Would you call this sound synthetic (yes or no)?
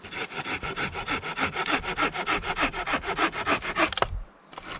no